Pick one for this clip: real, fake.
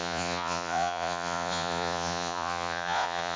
fake